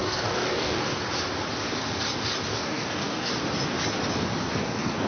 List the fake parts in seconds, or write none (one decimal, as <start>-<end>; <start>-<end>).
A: 0.0-1.0; 2.5-3.3; 4.6-5.1